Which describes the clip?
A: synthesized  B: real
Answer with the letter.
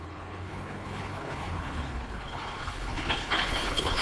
A